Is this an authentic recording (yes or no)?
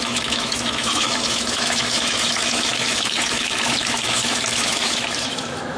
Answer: no